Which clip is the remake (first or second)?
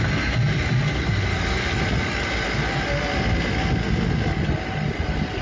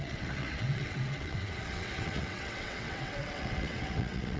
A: second